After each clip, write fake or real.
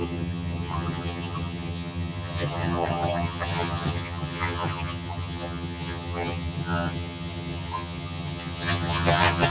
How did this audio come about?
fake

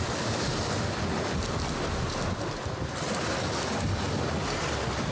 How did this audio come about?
real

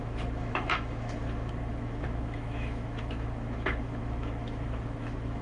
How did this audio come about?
fake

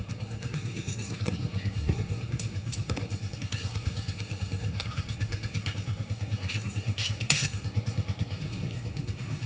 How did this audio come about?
fake